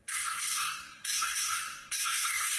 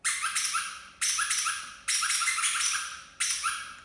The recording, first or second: second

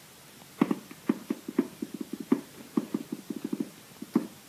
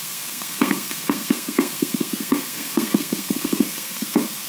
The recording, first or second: first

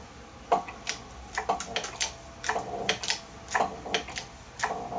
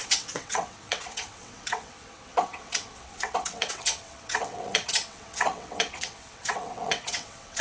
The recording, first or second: first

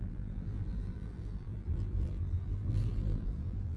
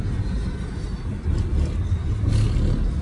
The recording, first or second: second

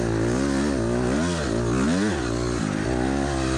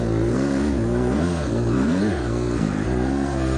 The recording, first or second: first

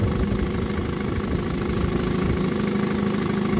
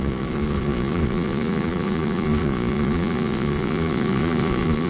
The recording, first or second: first